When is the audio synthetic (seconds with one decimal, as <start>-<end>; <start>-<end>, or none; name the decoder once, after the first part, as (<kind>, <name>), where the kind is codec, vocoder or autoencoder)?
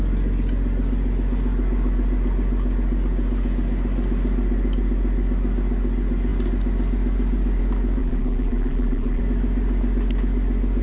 8.0-9.2 (vocoder, BigVGAN v2)